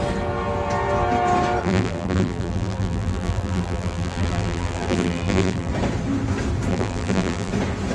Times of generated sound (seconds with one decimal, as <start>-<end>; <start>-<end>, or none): 1.6-5.7; 6.7-7.5